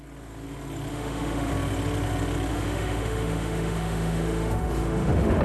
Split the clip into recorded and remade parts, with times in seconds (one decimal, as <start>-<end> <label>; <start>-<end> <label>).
0.0-0.9 recorded; 0.9-1.5 remade; 1.5-2.5 recorded; 2.5-5.4 remade